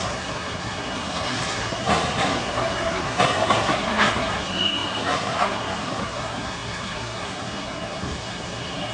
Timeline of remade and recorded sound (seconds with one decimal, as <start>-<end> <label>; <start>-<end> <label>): 0.0-8.9 remade